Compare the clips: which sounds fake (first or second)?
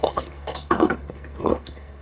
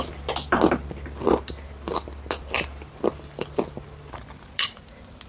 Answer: first